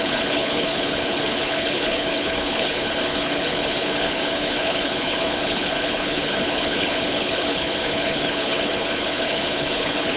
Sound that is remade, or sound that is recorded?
remade